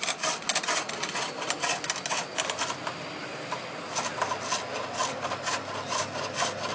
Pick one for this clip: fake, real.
real